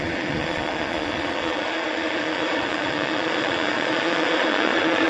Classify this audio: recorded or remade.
remade